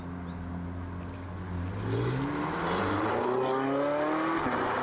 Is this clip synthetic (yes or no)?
no